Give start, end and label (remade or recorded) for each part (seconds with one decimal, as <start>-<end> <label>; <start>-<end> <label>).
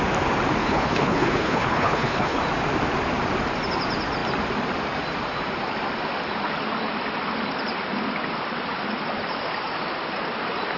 0.0-0.6 recorded; 0.6-2.4 remade; 2.4-10.8 recorded